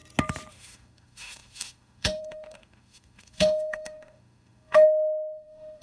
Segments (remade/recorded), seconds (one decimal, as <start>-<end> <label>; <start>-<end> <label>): 0.0-0.5 recorded; 0.5-5.8 remade